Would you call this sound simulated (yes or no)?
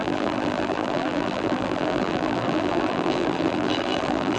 yes